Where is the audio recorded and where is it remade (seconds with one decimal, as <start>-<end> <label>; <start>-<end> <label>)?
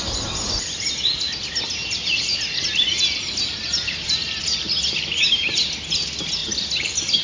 0.0-7.2 recorded